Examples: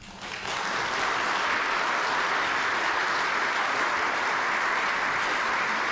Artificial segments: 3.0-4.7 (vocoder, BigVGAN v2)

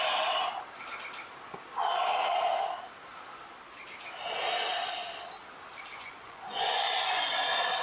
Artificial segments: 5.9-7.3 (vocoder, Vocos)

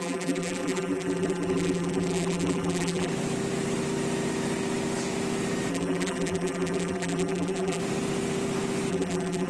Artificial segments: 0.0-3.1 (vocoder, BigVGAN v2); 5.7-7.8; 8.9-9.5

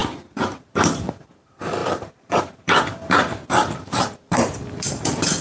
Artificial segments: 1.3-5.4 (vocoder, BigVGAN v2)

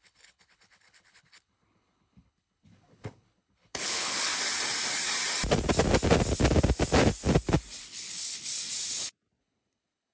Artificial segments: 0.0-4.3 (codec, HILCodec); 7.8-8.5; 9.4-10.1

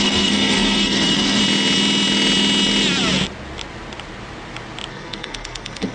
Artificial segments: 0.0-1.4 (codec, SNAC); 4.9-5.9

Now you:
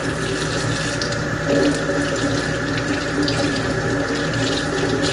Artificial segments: none

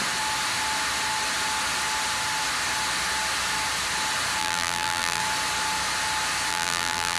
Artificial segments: 4.4-5.2 (vocoder, BigVGAN v2); 6.5-7.2